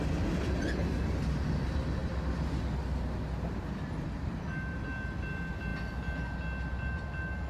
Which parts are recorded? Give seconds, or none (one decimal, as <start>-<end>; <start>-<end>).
0.0-7.5